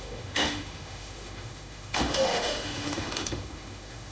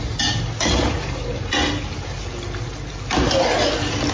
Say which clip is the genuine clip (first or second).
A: second